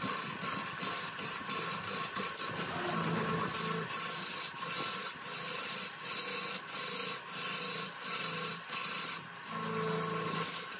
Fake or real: real